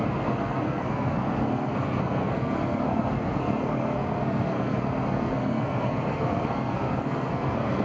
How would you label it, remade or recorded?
remade